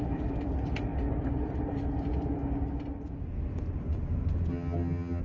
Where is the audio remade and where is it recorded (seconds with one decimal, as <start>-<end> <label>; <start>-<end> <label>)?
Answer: 0.0-4.5 recorded; 4.5-5.2 remade